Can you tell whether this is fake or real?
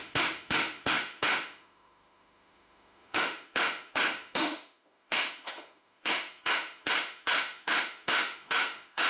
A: fake